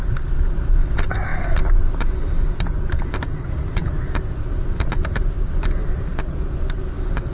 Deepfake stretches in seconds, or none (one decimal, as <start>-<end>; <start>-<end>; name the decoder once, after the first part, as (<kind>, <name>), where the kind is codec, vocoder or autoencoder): none